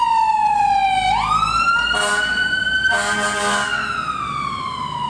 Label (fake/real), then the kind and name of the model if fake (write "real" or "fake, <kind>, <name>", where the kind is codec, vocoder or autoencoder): real